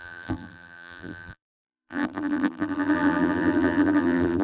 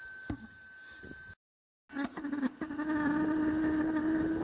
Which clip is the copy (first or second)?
first